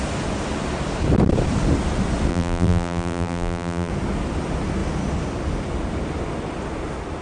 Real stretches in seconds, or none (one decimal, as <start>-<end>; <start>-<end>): 0.0-2.3; 3.9-7.2